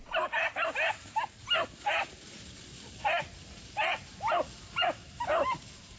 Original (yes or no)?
yes